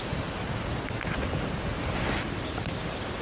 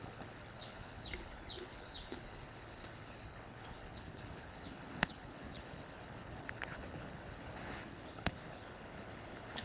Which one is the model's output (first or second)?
second